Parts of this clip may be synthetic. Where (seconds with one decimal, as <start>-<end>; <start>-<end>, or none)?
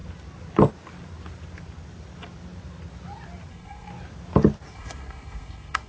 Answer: 3.5-3.9; 4.7-5.9